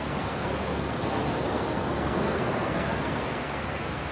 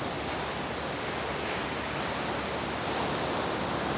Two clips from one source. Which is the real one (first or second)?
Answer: second